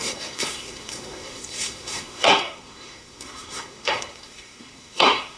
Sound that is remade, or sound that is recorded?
remade